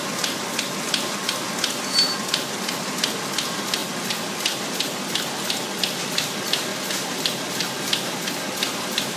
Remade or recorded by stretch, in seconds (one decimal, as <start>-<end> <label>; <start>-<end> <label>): 0.0-6.7 recorded; 6.7-7.8 remade; 7.8-9.2 recorded